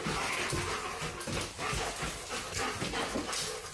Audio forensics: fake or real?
real